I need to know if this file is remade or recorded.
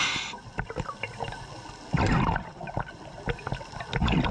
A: recorded